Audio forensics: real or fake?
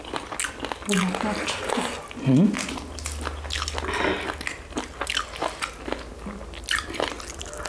real